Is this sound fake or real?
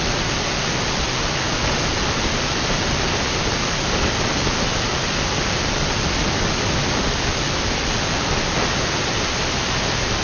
real